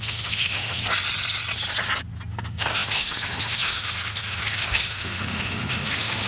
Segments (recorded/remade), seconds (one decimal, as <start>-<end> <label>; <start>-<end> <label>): 0.0-0.8 remade; 0.8-2.3 recorded; 2.3-6.3 remade

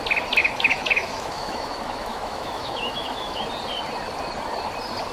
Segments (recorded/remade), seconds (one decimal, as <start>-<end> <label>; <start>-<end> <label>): 0.0-0.4 recorded; 0.4-3.5 remade; 3.5-5.1 recorded

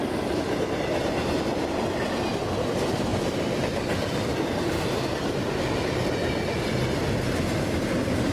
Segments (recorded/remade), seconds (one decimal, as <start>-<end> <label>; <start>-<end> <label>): 0.0-8.3 recorded

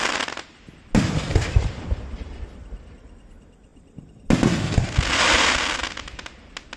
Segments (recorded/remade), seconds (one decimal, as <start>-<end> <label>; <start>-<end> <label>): 0.0-6.8 recorded

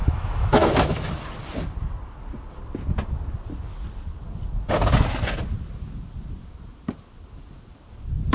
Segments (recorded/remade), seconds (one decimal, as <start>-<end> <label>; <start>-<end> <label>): 0.0-1.1 remade; 1.1-8.3 recorded